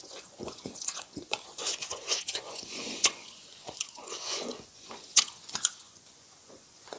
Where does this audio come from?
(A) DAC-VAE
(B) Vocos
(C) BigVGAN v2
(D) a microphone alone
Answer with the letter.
B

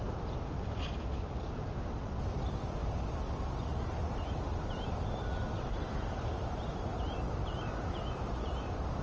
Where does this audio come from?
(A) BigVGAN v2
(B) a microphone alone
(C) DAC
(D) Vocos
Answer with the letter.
B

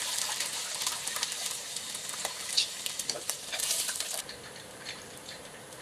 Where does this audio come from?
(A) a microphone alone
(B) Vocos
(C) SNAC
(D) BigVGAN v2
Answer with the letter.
D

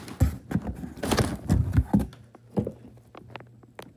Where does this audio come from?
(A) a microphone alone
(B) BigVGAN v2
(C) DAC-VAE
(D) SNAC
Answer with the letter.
A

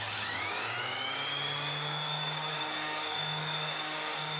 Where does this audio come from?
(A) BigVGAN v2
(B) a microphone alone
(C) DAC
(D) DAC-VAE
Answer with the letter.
C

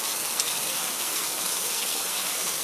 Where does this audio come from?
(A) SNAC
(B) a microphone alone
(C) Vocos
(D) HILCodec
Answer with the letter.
A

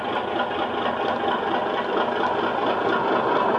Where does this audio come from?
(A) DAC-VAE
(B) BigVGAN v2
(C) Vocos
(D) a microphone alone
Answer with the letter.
D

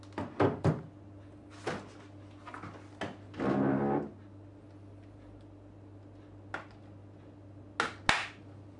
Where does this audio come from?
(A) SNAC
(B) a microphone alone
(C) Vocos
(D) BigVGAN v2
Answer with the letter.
B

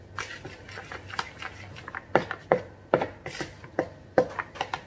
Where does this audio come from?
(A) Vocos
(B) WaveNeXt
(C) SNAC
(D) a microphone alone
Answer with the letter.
D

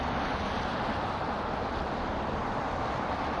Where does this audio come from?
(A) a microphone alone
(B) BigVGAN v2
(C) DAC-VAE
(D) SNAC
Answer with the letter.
A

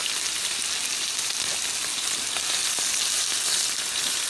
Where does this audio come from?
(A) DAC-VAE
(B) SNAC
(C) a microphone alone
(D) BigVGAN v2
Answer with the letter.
C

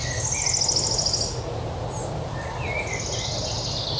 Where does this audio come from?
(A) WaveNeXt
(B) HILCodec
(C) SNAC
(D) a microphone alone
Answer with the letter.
D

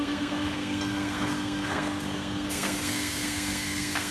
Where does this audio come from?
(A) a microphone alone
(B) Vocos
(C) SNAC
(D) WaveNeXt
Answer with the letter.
C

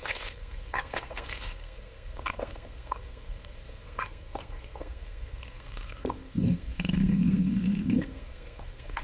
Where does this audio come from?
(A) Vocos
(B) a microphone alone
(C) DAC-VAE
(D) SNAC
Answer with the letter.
D